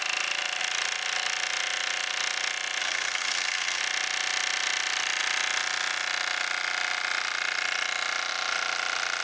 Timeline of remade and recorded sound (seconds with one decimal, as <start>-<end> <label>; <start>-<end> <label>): 0.0-2.8 recorded; 2.8-3.8 remade; 3.8-9.2 recorded